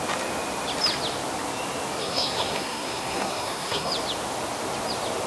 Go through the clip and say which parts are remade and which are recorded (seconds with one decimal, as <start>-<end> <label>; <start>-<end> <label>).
0.0-2.0 recorded; 2.0-3.9 remade; 3.9-5.3 recorded